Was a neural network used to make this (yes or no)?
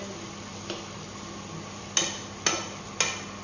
no